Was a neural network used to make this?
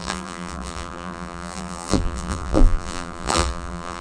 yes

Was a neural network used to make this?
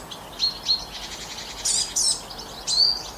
no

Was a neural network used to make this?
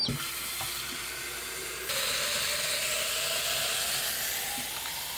no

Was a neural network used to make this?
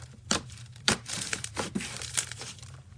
yes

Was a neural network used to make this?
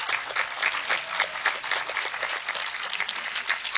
no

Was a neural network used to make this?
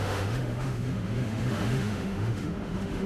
yes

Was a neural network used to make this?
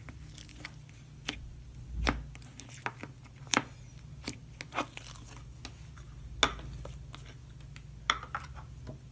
no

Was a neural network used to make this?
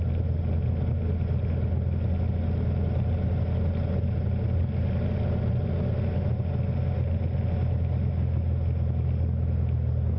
no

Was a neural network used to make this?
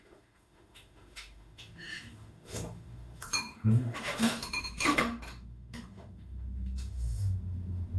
yes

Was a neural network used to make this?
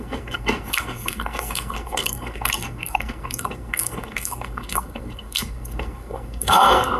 yes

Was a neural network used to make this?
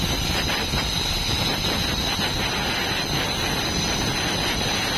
no